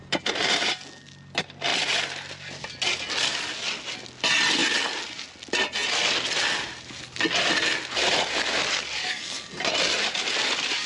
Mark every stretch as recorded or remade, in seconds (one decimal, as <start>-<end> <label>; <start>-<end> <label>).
0.0-9.0 recorded; 9.0-9.5 remade; 9.5-10.9 recorded